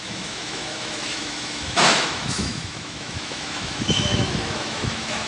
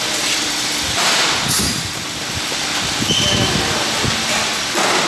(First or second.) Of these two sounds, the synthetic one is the first